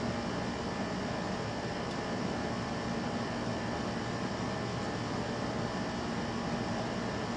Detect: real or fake real